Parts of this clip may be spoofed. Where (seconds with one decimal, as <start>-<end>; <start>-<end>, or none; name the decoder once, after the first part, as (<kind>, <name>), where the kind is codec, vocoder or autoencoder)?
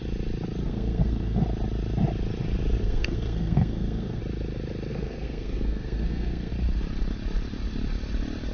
0.6-1.4 (codec, SNAC); 2.8-4.2; 4.9-6.5